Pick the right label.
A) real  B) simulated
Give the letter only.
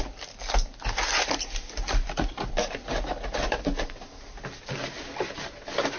A